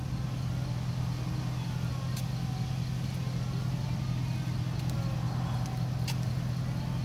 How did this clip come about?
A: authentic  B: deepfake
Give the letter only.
A